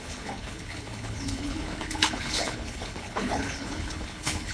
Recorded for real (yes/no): no